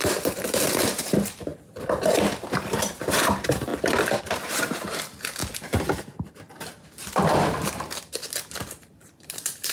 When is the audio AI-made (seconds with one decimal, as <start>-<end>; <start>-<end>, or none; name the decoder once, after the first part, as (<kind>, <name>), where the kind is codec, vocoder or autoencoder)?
0.0-1.5 (vocoder, BigVGAN v2); 2.5-3.7; 4.2-5.4; 6.0-9.7